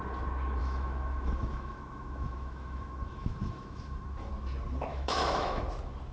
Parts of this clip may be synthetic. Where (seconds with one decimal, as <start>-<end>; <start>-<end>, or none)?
0.6-4.3; 4.9-5.6